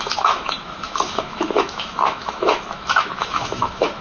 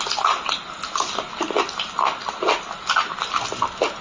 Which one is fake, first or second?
first